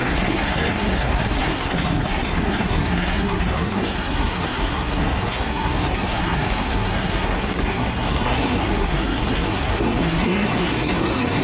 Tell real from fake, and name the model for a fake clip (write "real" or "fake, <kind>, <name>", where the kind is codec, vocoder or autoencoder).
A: fake, codec, SNAC